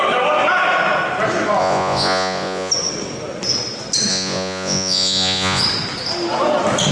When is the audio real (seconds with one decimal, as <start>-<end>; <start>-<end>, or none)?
0.0-1.6; 2.7-4.1; 5.6-6.9